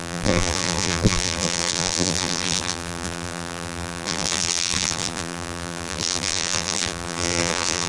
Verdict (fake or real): fake